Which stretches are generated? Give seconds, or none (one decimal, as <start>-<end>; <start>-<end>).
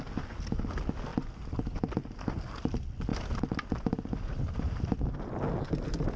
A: none